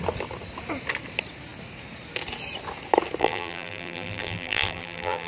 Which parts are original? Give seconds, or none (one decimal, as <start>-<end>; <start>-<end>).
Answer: 0.0-3.2